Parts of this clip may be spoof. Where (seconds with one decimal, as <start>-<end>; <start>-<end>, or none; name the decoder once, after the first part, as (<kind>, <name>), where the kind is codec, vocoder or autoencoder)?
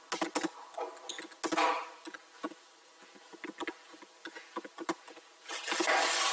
none